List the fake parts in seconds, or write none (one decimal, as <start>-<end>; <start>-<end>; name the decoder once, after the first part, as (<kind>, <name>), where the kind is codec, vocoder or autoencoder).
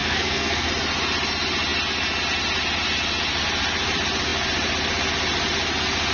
0.0-0.7 (codec, SNAC)